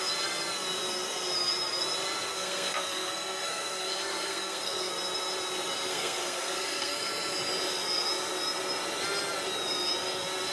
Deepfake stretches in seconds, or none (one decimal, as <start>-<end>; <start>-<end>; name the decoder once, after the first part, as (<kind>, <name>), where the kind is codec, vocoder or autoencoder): 2.3-4.9 (codec, SNAC); 5.9-7.1

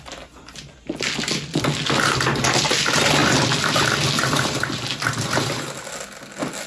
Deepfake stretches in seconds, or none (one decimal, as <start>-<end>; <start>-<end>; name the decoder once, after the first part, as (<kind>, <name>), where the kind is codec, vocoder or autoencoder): none

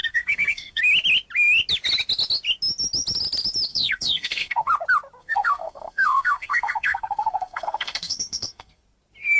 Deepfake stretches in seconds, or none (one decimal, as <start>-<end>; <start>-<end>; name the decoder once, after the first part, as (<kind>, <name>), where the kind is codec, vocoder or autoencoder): 0.0-0.8 (codec, SNAC); 3.7-4.7; 5.2-8.8

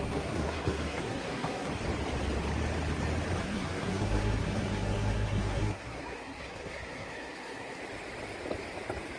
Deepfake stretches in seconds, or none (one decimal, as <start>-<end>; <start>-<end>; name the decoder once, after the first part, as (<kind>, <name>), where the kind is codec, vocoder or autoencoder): 0.0-1.7 (codec, SNAC); 3.4-7.8

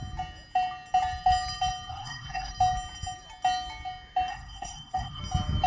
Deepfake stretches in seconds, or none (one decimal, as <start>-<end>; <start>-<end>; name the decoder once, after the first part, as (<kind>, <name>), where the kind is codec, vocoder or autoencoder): 1.9-2.5 (codec, SNAC); 4.3-5.2

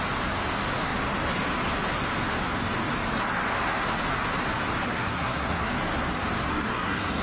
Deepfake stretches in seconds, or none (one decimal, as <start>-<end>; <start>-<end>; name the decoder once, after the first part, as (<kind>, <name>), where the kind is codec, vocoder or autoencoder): 4.8-5.7 (codec, SNAC); 6.5-7.2

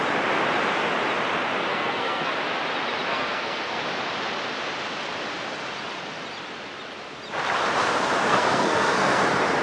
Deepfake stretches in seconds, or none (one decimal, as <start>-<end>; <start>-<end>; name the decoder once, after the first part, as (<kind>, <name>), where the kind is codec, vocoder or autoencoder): 1.7-2.3 (codec, SNAC); 3.1-3.8; 8.2-9.2